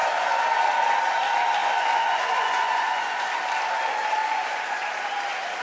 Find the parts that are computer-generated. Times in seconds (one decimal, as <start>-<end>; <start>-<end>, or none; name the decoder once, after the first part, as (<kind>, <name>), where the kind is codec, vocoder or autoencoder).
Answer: 0.0-0.6 (vocoder, Vocos); 1.6-3.3; 4.2-4.9